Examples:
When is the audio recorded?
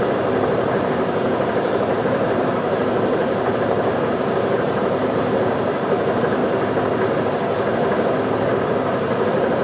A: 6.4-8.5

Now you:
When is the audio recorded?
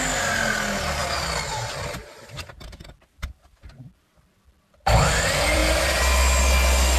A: 5.6-7.0